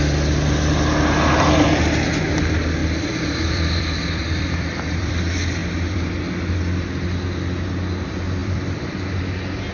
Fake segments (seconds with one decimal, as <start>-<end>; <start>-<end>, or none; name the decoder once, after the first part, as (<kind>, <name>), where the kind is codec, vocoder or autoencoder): 2.8-5.1 (vocoder, BigVGAN v2); 5.6-6.1; 8.4-9.2